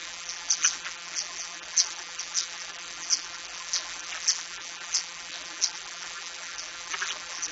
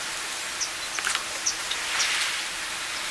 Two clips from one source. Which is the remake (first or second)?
first